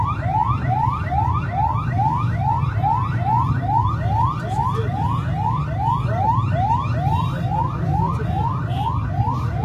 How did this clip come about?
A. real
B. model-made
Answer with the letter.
A